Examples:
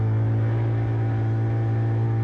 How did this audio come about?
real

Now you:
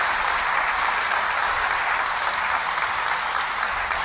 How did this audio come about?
real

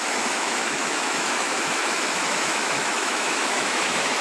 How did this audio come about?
fake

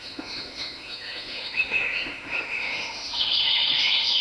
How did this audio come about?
fake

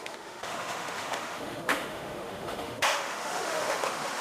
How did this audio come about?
fake